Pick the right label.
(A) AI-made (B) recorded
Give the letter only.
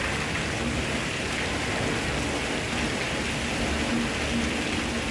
B